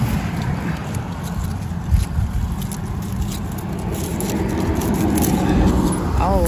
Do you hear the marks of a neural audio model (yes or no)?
no